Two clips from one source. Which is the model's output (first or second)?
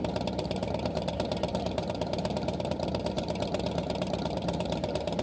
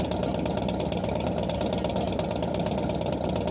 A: first